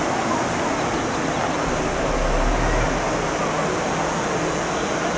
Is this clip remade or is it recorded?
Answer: recorded